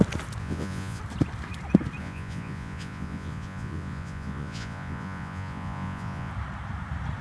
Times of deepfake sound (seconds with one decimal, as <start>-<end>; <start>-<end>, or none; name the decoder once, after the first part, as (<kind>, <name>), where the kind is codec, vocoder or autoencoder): 0.4-1.0 (vocoder, Vocos); 2.0-6.3